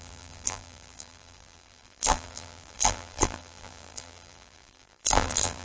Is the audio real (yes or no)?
no